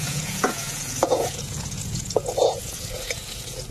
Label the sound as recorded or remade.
remade